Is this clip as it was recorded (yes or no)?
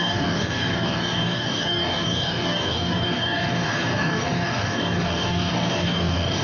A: no